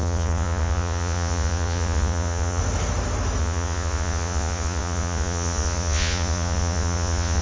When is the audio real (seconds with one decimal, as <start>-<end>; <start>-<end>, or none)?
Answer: 2.6-3.4